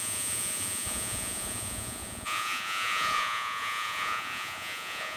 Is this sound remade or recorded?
remade